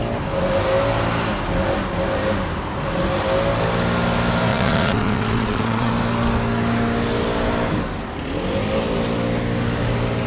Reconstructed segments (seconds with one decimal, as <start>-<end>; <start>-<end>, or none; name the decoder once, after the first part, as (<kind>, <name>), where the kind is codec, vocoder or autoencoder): 4.5-5.9 (vocoder, Vocos)